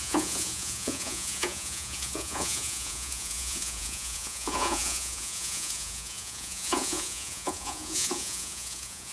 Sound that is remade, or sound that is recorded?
remade